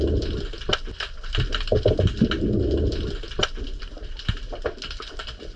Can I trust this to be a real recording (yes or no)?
yes